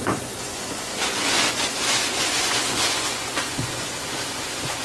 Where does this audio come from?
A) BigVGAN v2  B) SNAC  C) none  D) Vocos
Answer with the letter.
D